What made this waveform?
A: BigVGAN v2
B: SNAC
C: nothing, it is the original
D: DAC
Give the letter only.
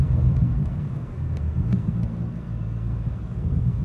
B